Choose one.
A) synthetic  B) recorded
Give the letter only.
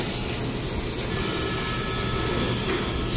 B